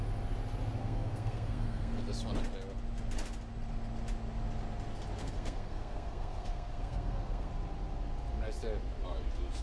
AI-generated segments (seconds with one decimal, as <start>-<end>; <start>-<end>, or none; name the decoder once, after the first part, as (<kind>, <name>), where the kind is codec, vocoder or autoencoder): 0.8-2.0 (codec, SNAC); 5.2-7.5